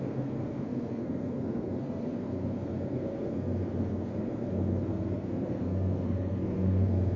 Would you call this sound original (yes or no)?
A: no